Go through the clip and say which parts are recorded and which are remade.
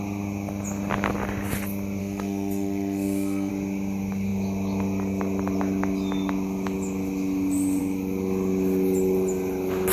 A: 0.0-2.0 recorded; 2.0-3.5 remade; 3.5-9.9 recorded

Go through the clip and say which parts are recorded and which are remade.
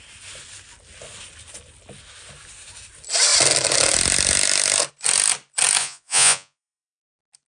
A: 0.0-5.8 recorded; 5.8-7.0 remade; 7.0-7.5 recorded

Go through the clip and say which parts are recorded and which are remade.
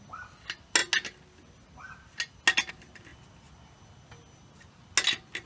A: 0.0-5.5 recorded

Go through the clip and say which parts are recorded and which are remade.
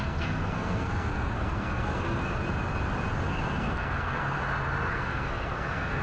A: 0.0-2.4 remade; 2.4-3.3 recorded; 3.3-4.4 remade; 4.4-4.9 recorded; 4.9-6.0 remade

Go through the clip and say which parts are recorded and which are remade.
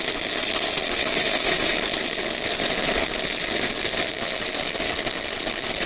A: 0.0-1.0 recorded; 1.0-1.7 remade; 1.7-5.9 recorded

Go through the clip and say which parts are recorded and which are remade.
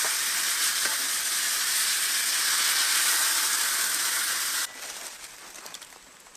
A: 0.0-6.4 recorded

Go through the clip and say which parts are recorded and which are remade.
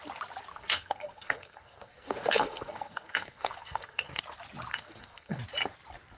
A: 0.0-0.5 recorded; 0.5-4.2 remade; 4.2-4.7 recorded; 4.7-5.4 remade; 5.4-6.2 recorded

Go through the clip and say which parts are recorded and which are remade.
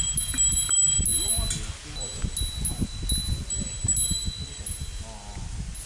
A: 0.0-5.9 recorded